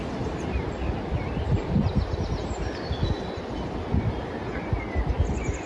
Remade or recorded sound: recorded